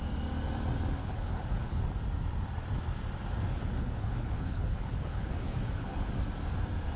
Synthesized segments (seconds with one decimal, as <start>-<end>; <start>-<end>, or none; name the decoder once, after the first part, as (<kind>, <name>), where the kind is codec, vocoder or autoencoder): 1.0-1.9 (codec, HILCodec); 3.5-6.1